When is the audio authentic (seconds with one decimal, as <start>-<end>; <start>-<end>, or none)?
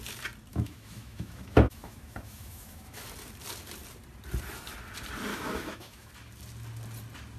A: 0.0-0.5; 3.0-5.3; 6.1-7.4